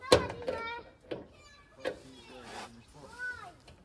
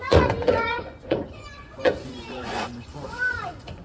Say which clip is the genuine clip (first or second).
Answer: first